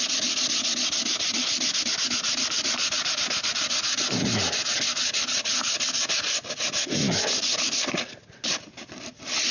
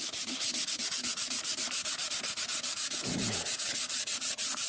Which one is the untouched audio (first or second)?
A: first